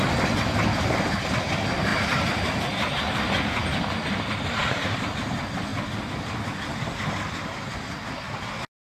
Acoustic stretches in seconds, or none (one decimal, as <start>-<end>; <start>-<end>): 0.0-8.8